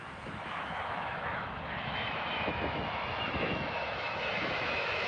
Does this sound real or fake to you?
fake